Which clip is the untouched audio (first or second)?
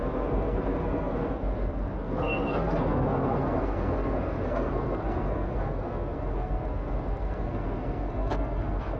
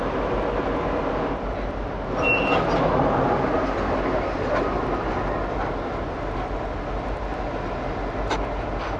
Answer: second